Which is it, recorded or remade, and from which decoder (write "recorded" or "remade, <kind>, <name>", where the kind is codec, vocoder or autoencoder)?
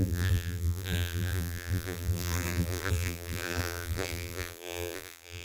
remade, vocoder, BigVGAN v2